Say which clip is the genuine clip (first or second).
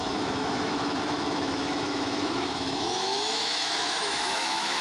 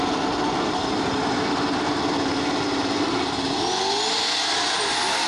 second